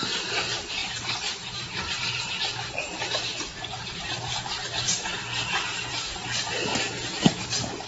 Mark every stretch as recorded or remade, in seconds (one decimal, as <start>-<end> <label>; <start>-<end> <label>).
0.0-0.8 recorded; 0.8-2.3 remade; 2.3-6.7 recorded; 6.7-7.4 remade; 7.4-7.9 recorded